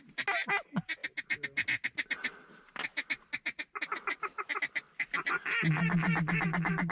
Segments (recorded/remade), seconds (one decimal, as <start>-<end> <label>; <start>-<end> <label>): 0.0-6.9 recorded